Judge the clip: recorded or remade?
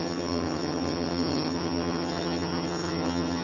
remade